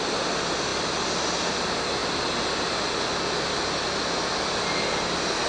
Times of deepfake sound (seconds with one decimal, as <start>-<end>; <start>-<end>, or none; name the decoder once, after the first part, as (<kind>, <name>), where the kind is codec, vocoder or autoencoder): none